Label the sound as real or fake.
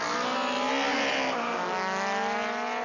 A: real